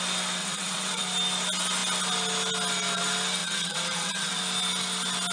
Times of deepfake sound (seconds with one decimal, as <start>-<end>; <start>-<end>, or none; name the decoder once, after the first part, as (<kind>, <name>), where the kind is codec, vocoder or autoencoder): 0.4-1.0 (vocoder, WaveNeXt); 3.4-4.4

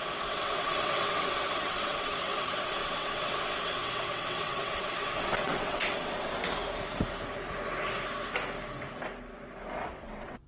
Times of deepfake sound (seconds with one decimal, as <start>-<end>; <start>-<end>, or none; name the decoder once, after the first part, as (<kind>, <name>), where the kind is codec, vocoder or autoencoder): 0.0-6.3 (vocoder, WaveNeXt); 9.9-10.5

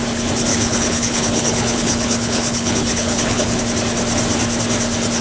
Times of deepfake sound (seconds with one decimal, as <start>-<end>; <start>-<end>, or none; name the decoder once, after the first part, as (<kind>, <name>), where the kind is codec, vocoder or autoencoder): 0.5-3.6 (codec, HILCodec)

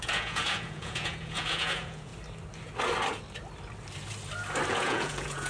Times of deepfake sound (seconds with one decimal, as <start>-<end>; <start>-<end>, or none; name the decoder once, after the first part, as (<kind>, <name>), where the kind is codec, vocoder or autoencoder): 0.0-2.1 (vocoder, Vocos); 4.7-5.5